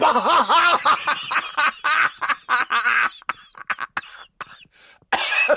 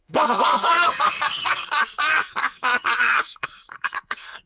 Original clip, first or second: first